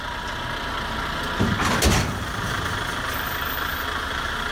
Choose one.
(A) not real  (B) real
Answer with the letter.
B